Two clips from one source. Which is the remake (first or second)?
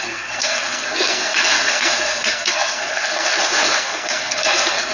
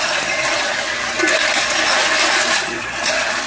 first